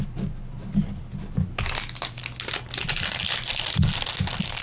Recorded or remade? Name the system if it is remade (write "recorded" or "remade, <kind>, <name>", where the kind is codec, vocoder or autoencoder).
recorded